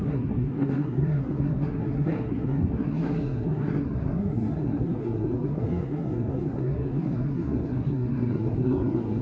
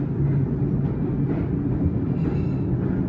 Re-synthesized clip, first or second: first